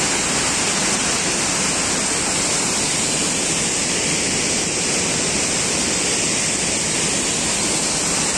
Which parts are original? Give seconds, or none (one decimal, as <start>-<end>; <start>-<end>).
0.0-8.4

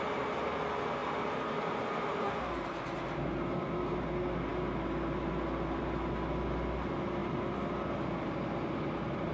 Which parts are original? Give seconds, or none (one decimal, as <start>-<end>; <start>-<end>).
0.0-1.0; 4.0-9.3